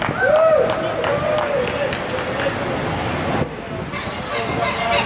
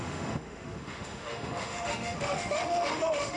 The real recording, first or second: first